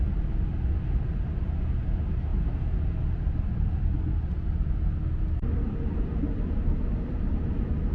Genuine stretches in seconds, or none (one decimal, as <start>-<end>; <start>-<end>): 0.0-7.9